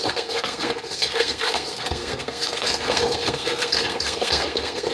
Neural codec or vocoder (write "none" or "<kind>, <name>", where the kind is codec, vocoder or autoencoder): codec, SNAC